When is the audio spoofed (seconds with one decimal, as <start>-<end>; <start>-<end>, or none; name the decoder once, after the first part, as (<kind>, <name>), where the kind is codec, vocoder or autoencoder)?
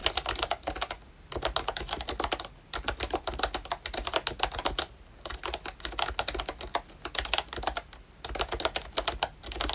none